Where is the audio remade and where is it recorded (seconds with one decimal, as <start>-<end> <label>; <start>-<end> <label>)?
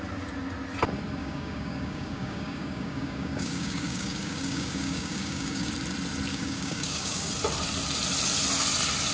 0.0-1.2 recorded; 1.2-5.7 remade; 5.7-6.3 recorded; 6.3-7.3 remade; 7.3-9.1 recorded